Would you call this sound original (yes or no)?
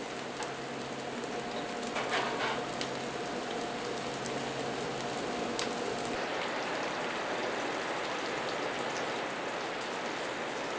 yes